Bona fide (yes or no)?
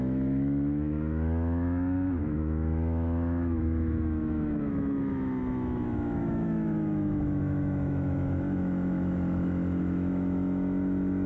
no